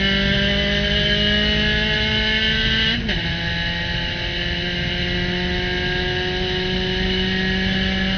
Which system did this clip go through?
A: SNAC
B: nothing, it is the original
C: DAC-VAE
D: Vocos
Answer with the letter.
B